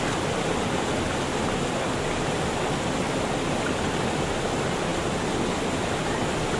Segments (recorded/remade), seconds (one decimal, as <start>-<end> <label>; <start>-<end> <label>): 0.0-6.6 recorded